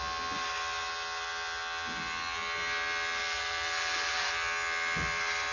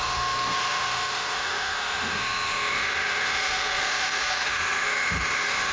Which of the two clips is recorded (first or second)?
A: first